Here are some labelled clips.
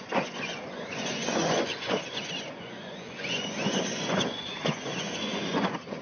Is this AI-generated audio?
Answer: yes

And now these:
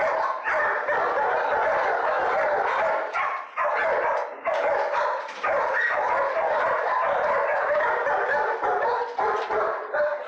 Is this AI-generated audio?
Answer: yes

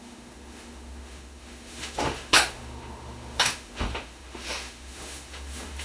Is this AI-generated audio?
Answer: yes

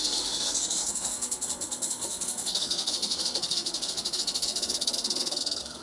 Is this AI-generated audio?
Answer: yes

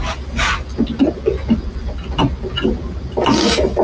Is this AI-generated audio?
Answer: no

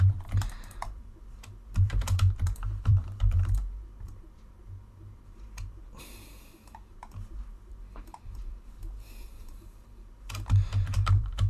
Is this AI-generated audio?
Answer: yes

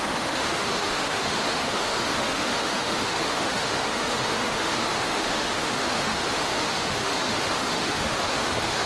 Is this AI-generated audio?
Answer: yes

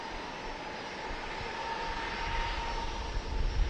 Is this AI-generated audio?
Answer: no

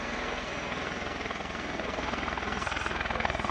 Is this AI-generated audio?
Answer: yes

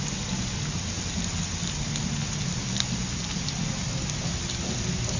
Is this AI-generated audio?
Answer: no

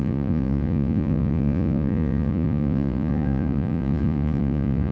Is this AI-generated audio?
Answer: yes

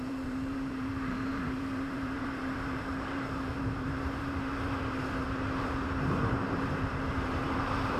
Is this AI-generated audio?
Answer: yes